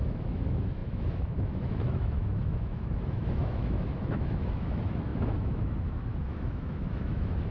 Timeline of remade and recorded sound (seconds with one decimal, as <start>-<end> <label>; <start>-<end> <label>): 0.0-7.5 remade